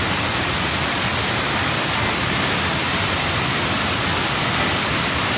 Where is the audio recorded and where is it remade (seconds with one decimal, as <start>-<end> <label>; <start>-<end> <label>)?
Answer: 0.0-5.4 recorded